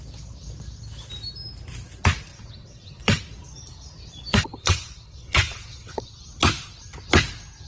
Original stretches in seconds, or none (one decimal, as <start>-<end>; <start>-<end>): 0.0-2.3; 3.2-4.3; 6.1-7.7